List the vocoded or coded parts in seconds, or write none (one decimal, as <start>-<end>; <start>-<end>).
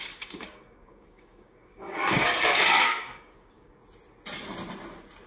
0.0-3.8